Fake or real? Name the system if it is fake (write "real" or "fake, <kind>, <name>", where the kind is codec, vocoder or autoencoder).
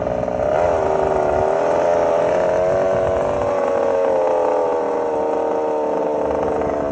real